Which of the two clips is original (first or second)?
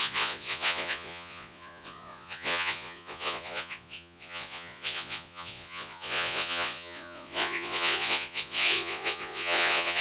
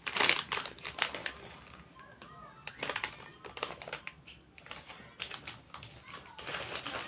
second